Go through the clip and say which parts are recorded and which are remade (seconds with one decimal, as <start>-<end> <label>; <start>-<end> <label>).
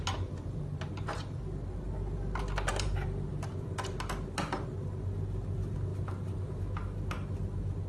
0.0-2.7 recorded; 2.7-3.3 remade; 3.3-5.9 recorded; 5.9-6.6 remade; 6.6-7.9 recorded